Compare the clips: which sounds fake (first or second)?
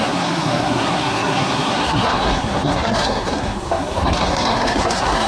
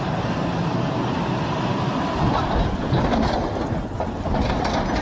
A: first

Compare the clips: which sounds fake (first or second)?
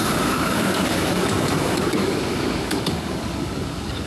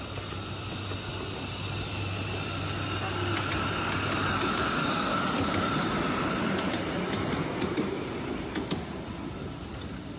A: first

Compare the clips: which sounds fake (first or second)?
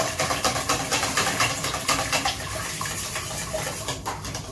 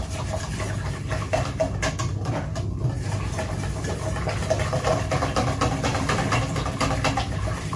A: first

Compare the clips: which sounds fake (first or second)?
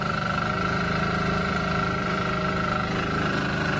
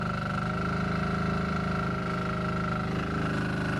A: first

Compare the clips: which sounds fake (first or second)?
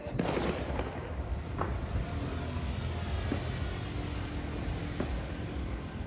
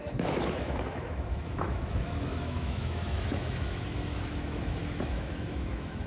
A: second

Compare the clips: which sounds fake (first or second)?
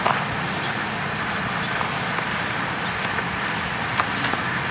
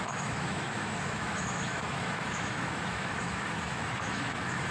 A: second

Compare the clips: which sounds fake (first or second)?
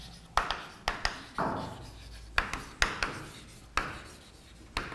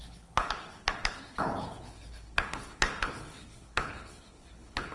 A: second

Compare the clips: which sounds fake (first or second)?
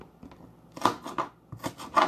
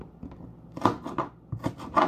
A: second